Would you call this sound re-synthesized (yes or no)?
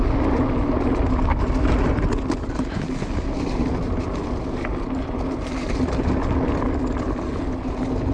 no